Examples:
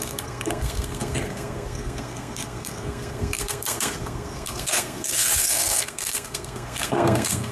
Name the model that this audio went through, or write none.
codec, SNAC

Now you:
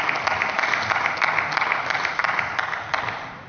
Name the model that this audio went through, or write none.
none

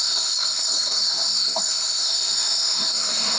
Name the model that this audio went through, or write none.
codec, SNAC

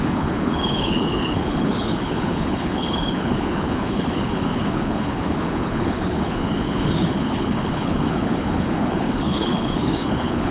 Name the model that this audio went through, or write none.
codec, HILCodec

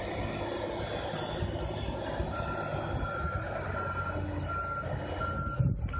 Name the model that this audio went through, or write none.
none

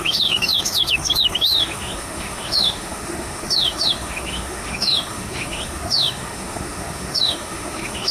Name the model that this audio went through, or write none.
autoencoder, DAC-VAE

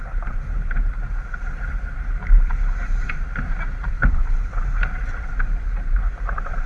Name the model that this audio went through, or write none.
vocoder, BigVGAN v2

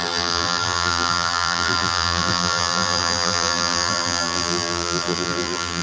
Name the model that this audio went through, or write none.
vocoder, BigVGAN v2